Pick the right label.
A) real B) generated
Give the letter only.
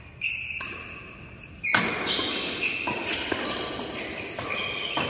A